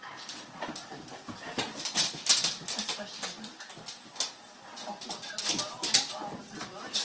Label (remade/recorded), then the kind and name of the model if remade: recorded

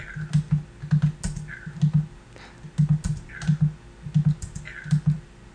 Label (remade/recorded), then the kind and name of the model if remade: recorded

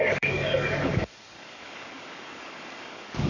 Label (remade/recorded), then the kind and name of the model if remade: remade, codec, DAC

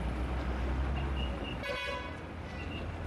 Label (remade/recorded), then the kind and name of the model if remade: recorded